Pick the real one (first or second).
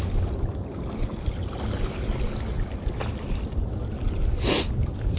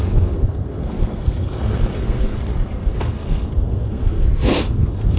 first